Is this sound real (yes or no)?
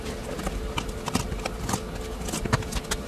yes